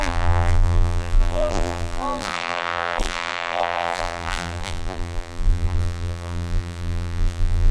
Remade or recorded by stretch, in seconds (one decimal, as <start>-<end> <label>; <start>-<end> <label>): 0.0-7.7 remade